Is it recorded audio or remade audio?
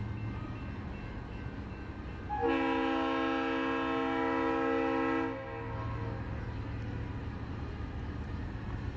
recorded